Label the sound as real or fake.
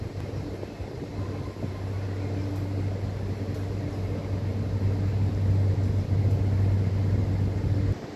real